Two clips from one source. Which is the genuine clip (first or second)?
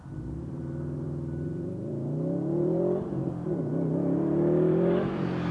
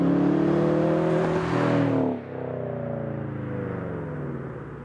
second